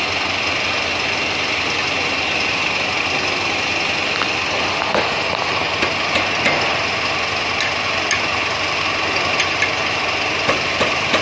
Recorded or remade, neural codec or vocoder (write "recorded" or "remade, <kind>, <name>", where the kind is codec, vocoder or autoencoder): recorded